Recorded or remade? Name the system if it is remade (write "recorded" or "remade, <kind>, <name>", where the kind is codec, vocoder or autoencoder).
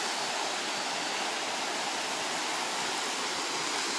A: recorded